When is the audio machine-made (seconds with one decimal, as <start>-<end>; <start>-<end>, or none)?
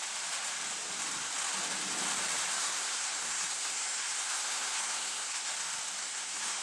2.6-5.5; 6.0-6.6